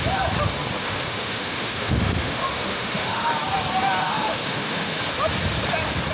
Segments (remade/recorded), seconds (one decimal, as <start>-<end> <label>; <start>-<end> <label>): 0.0-0.8 recorded; 0.8-3.3 remade; 3.3-4.0 recorded; 4.0-5.0 remade; 5.0-6.1 recorded